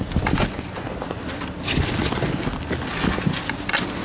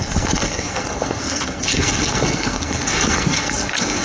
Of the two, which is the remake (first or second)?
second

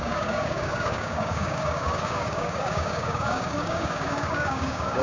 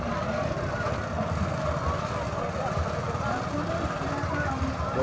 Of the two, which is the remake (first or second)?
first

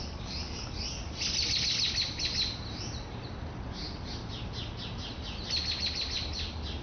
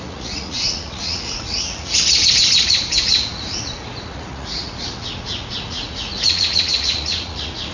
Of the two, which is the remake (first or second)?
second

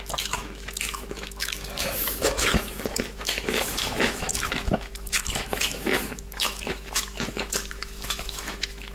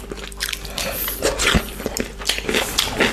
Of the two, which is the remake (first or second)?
first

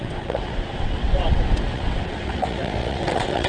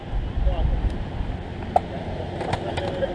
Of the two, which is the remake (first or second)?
first